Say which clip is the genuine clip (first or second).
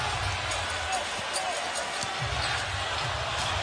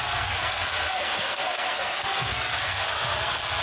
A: first